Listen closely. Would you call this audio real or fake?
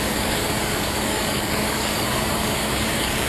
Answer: fake